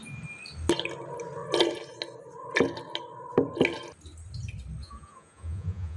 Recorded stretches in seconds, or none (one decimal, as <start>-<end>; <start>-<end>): 0.0-4.8